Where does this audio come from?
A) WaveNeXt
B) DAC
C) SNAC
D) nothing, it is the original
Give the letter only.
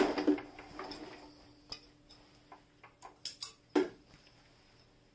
D